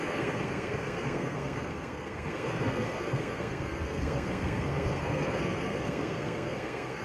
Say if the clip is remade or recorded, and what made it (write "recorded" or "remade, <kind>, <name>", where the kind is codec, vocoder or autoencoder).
remade, codec, SNAC